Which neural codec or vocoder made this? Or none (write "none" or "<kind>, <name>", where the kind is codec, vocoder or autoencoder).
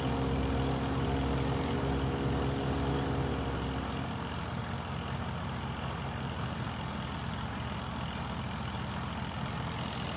none